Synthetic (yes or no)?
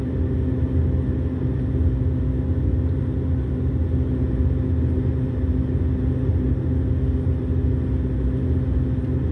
no